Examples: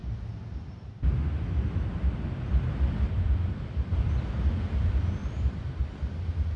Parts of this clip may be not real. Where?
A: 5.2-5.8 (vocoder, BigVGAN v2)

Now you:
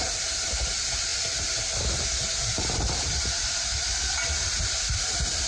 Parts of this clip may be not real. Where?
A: 1.1-2.8 (vocoder, BigVGAN v2)

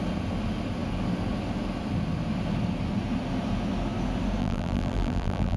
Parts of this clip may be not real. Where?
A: 4.4-5.6 (vocoder, BigVGAN v2)

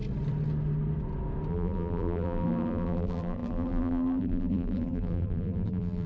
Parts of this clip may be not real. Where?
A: 1.5-6.1 (vocoder, BigVGAN v2)

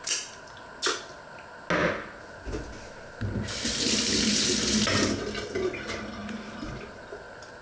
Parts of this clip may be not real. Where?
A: none

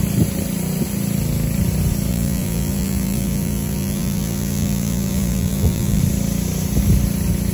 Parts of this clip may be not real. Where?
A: 2.1-6.0 (vocoder, BigVGAN v2)

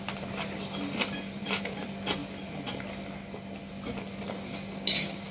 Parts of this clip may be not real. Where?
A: none

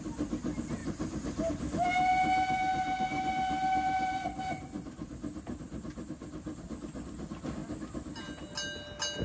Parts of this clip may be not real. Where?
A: 0.8-1.5 (vocoder, BigVGAN v2)